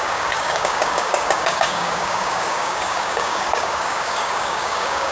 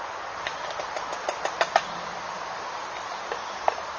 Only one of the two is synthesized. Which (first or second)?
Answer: first